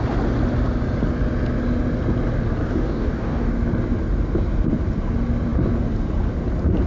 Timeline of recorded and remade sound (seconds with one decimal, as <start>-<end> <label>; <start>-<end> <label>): 0.0-2.6 recorded; 2.6-3.5 remade; 3.5-6.9 recorded